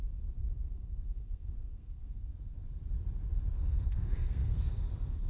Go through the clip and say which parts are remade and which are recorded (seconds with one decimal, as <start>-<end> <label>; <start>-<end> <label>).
0.0-0.4 recorded; 0.4-2.4 remade; 2.4-3.6 recorded; 3.6-4.7 remade; 4.7-5.3 recorded

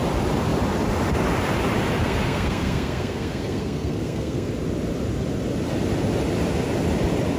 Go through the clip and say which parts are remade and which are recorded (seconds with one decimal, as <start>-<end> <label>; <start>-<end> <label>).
0.0-2.0 recorded; 2.0-4.5 remade; 4.5-7.4 recorded

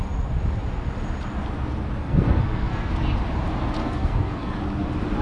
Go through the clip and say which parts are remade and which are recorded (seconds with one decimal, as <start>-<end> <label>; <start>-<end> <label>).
0.0-2.0 recorded; 2.0-2.9 remade; 2.9-3.8 recorded; 3.8-4.5 remade; 4.5-5.2 recorded

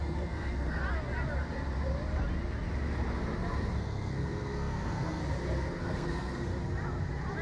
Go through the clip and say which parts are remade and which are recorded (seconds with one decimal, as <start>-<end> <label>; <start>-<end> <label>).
0.0-0.8 remade; 0.8-3.7 recorded; 3.7-5.2 remade; 5.2-5.8 recorded; 5.8-6.5 remade; 6.5-7.4 recorded

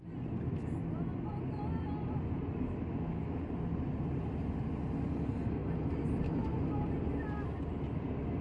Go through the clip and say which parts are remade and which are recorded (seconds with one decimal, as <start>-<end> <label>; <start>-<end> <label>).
0.0-8.4 recorded

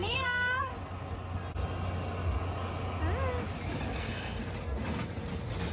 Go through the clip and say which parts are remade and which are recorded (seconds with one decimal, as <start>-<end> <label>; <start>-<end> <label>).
0.0-0.7 remade; 0.7-4.0 recorded; 4.0-4.4 remade; 4.4-5.7 recorded

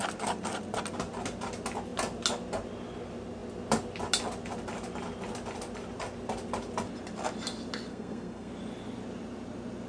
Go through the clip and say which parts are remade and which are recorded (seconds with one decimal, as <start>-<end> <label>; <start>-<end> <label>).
0.0-7.9 recorded; 7.9-8.5 remade; 8.5-9.9 recorded